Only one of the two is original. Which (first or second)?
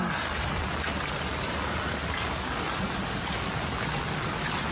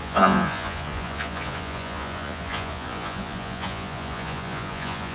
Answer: first